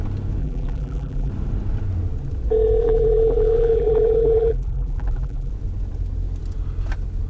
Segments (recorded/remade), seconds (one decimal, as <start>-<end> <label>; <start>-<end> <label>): 0.0-0.4 recorded; 0.4-1.3 remade; 1.3-2.8 recorded; 2.8-5.5 remade; 5.5-7.3 recorded